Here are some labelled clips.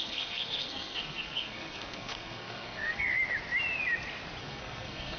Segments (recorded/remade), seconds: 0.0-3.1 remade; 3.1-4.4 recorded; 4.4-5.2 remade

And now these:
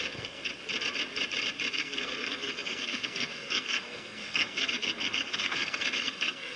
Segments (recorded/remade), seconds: 0.0-0.5 remade; 0.5-1.7 recorded; 1.7-6.6 remade